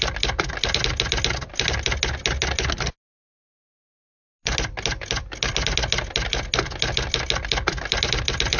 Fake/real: real